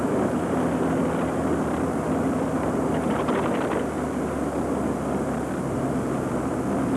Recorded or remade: recorded